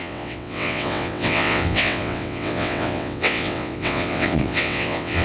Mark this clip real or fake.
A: fake